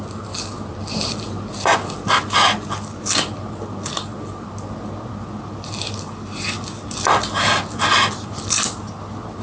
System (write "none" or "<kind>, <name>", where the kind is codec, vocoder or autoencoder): none